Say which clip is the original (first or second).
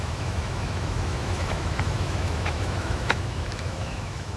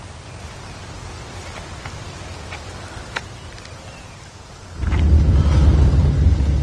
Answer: second